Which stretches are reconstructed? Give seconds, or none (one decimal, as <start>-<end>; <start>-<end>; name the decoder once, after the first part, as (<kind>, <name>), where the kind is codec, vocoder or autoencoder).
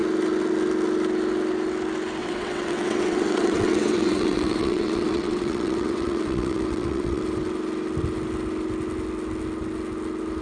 2.2-7.2 (vocoder, WaveNeXt)